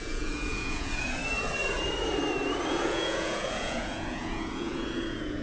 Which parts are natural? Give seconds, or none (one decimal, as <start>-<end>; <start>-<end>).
1.2-2.7